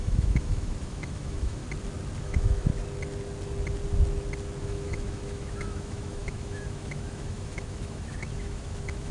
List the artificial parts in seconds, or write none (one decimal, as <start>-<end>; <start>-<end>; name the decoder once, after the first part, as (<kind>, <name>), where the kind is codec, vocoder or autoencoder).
0.0-1.6 (autoencoder, DAC-VAE); 2.2-2.7; 4.6-9.1